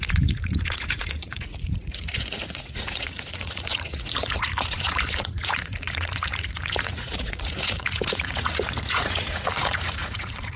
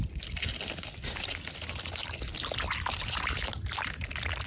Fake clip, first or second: first